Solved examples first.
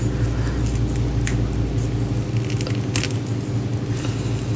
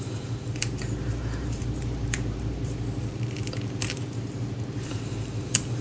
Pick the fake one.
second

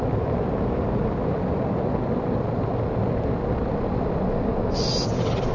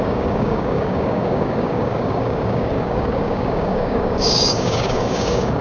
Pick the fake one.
second